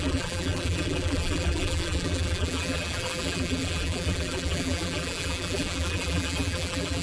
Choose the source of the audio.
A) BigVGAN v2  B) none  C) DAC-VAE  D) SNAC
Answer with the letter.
A